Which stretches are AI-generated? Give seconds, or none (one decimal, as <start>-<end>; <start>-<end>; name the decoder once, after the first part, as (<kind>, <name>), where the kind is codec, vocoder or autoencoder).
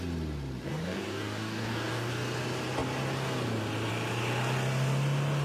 0.7-2.1 (codec, DAC)